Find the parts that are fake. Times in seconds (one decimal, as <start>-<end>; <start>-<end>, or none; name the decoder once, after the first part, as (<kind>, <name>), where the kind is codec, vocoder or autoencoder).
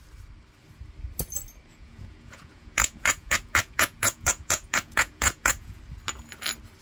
1.7-5.8 (vocoder, Vocos)